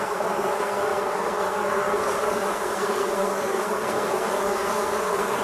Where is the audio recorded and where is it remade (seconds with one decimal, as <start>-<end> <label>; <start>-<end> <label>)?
0.0-5.4 remade